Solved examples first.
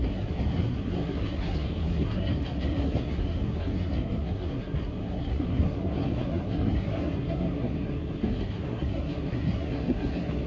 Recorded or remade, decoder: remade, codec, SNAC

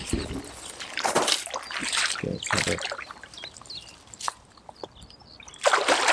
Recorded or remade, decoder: recorded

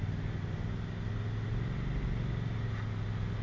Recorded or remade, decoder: recorded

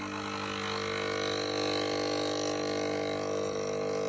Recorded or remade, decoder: recorded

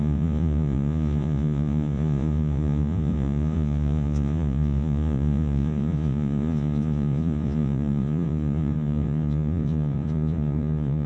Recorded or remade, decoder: remade, vocoder, Vocos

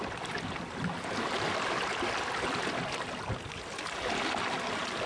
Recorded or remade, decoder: recorded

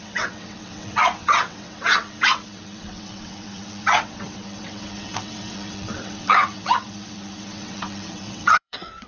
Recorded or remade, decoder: remade, vocoder, WaveNeXt